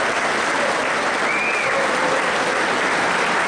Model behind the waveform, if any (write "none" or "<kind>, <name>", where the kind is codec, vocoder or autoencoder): none